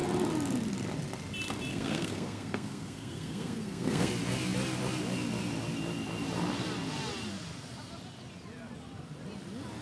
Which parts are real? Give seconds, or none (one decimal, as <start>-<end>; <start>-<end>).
0.0-1.7; 4.1-9.8